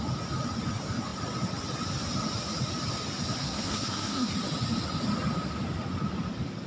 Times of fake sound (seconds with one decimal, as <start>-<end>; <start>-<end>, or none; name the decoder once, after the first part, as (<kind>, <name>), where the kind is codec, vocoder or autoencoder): 3.4-4.3 (codec, SNAC)